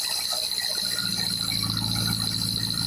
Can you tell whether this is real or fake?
real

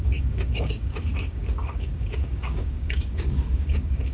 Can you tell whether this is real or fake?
fake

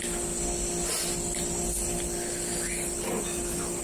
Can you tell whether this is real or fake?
real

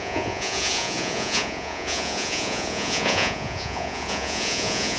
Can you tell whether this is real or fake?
fake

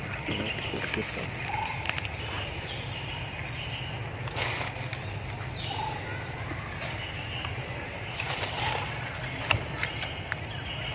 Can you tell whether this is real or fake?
real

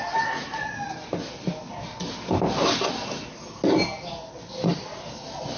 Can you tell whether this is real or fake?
real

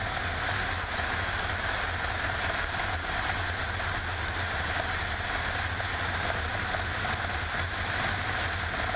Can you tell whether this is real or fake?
real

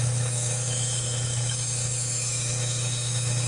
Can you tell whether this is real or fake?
fake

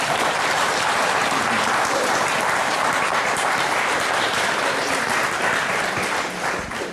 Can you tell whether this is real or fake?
fake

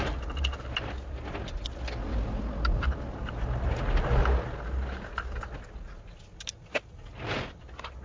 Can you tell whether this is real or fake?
real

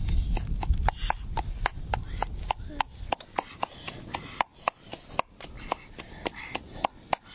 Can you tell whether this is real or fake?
real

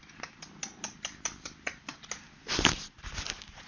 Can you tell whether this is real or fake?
real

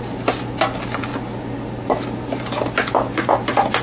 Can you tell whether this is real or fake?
real